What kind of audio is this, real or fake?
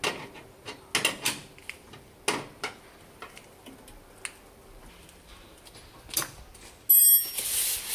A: real